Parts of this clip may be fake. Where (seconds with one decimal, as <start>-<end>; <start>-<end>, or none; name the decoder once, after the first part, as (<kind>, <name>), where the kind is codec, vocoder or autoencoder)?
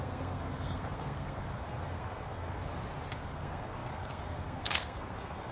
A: 0.0-2.6 (codec, SNAC); 3.1-5.5